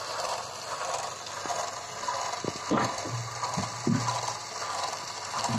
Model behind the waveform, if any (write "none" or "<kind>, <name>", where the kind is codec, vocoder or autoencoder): vocoder, BigVGAN v2